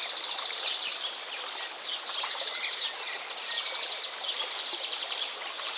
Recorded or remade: recorded